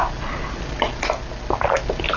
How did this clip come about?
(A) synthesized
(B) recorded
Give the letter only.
B